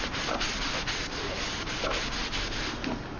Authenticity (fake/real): real